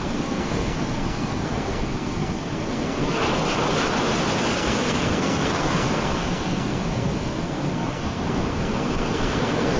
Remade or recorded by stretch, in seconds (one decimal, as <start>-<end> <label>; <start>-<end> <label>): 0.0-3.2 remade; 3.2-4.4 recorded; 4.4-9.8 remade